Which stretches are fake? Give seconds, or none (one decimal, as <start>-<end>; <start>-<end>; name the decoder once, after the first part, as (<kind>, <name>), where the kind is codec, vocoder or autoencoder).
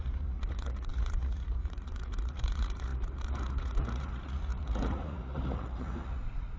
0.0-6.6 (vocoder, Vocos)